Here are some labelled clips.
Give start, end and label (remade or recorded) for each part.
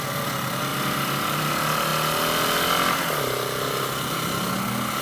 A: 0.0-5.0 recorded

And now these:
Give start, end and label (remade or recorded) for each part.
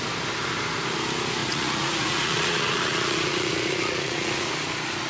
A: 0.0-1.4 recorded; 1.4-4.5 remade; 4.5-5.1 recorded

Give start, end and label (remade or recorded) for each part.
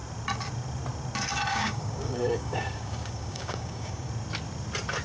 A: 0.0-1.5 recorded; 1.5-4.1 remade; 4.1-5.0 recorded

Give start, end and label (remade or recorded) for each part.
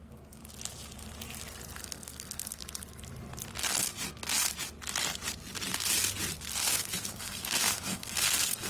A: 0.0-0.4 remade; 0.4-1.8 recorded; 1.8-2.6 remade; 2.6-6.7 recorded; 6.7-8.7 remade